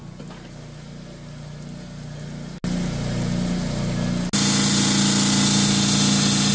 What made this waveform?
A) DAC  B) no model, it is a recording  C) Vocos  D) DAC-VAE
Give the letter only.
B